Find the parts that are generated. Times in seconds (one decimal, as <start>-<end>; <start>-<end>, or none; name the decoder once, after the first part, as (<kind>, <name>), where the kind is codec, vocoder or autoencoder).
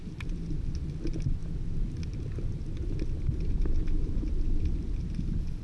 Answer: none